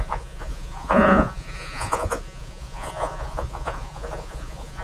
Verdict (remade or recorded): remade